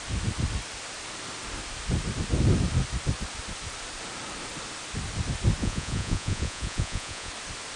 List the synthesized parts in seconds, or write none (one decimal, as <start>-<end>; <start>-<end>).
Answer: 5.6-7.3